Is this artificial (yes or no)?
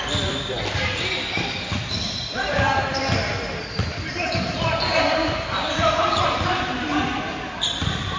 yes